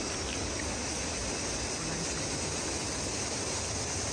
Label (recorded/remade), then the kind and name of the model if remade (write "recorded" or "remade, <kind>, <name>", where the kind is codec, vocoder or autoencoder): recorded